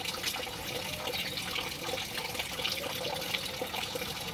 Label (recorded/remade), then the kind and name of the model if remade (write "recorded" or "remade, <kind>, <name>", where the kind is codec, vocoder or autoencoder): recorded